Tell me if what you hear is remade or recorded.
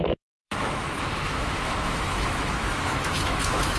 remade